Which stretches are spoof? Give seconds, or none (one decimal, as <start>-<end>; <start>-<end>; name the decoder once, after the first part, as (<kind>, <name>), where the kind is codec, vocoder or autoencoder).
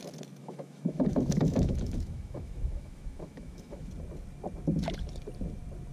0.4-3.9 (autoencoder, DAC-VAE)